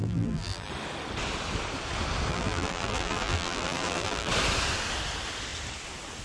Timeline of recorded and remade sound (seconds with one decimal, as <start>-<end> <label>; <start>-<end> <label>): 0.0-0.7 remade; 0.7-2.3 recorded; 2.3-4.3 remade; 4.3-6.2 recorded